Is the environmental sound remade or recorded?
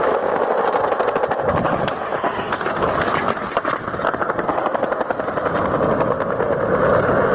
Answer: recorded